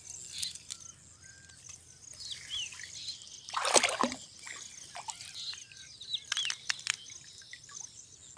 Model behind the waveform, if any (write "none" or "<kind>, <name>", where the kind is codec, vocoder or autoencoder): none